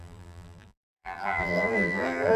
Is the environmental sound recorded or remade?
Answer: remade